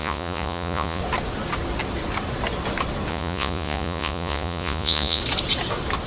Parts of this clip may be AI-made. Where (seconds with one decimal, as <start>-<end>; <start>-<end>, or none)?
0.0-1.0; 3.1-5.2